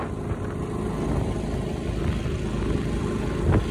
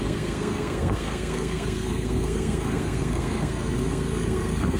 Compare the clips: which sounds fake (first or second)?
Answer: second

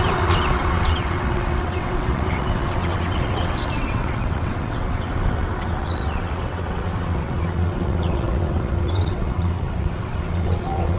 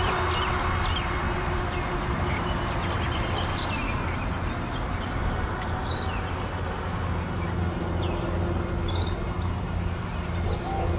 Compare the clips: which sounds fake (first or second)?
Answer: first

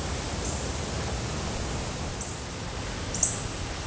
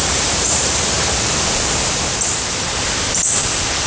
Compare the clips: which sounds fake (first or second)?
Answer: second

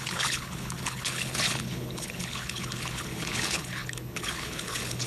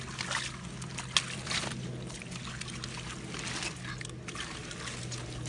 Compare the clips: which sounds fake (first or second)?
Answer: first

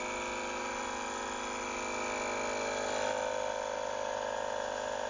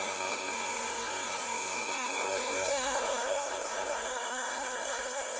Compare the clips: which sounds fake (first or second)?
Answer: second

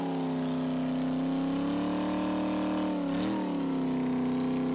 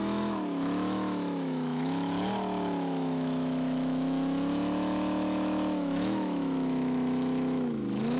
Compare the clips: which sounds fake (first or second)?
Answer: second